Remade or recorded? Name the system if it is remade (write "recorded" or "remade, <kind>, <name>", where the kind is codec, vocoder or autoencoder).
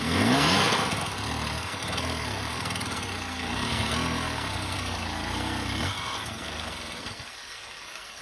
remade, codec, SNAC